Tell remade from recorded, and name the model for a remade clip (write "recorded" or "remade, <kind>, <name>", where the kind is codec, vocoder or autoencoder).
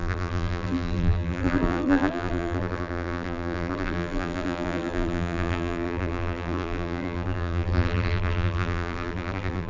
remade, vocoder, BigVGAN v2